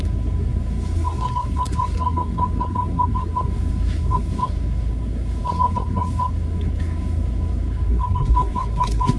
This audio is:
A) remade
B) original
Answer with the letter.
A